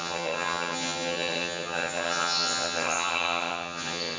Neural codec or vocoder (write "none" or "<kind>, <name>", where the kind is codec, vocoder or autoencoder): vocoder, HiFi-GAN